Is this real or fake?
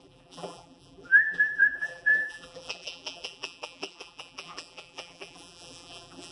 fake